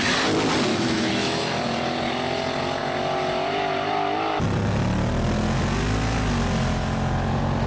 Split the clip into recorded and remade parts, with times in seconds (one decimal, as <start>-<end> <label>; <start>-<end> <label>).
0.0-0.7 recorded; 0.7-1.5 remade; 1.5-7.7 recorded